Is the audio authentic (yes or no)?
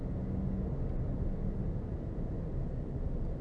yes